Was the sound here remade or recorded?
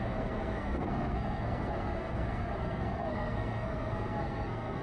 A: remade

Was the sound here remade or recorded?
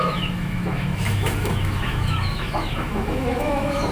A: remade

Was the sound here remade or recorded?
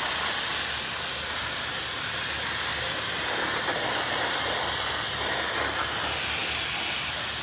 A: recorded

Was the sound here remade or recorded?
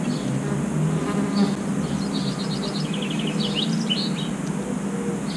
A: recorded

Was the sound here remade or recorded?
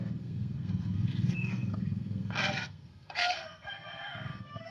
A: remade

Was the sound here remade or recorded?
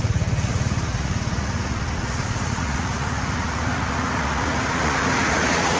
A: remade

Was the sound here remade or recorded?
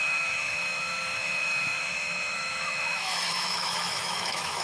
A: remade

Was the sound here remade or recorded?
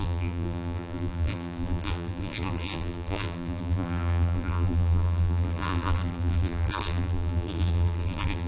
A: remade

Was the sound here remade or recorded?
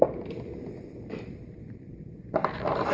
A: recorded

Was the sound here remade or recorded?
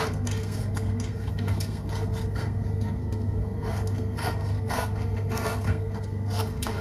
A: remade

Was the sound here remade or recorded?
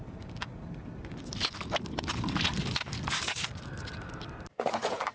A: recorded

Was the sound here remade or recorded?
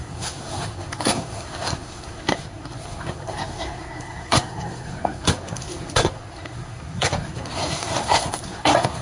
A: remade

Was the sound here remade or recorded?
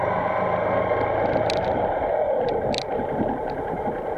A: recorded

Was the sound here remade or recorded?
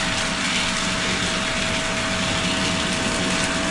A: recorded